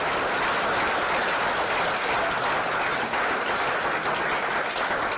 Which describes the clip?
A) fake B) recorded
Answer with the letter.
B